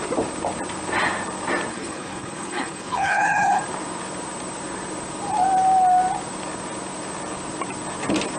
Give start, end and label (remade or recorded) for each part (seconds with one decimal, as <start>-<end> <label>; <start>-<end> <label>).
0.0-1.7 recorded; 1.7-3.6 remade; 3.6-8.4 recorded